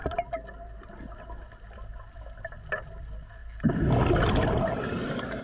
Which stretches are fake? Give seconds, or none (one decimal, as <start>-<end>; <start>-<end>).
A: 1.6-3.4; 4.9-5.4